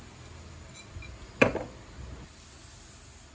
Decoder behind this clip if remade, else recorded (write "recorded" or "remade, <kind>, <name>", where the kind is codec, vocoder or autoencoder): recorded